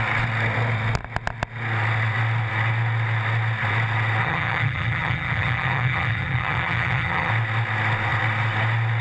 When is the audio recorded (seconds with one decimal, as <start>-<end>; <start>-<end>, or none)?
0.0-4.2; 7.3-9.0